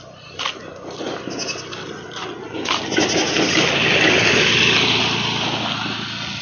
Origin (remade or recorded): recorded